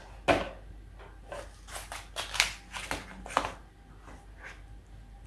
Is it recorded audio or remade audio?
recorded